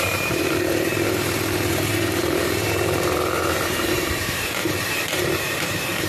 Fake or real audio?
fake